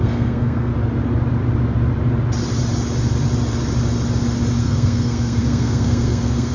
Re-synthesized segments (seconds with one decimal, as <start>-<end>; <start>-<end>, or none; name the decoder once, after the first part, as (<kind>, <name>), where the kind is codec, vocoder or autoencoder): 0.0-0.7 (codec, SNAC); 4.6-6.5